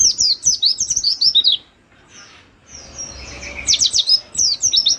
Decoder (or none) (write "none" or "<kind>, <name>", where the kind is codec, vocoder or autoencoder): none